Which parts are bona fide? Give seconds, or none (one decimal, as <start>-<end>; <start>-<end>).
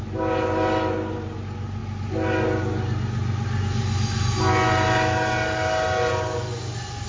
0.0-7.1